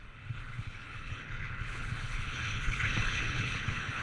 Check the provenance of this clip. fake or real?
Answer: fake